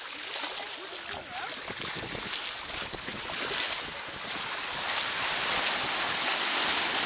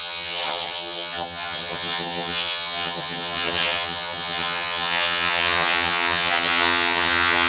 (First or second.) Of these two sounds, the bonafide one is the first